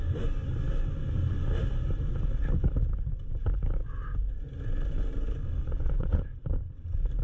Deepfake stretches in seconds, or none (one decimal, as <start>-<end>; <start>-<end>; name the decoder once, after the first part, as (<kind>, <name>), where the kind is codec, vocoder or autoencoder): 5.6-6.2 (vocoder, Vocos)